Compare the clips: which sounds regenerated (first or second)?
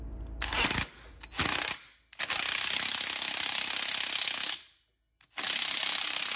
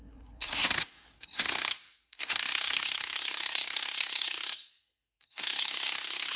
second